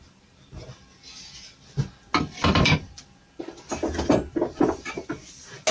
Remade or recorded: recorded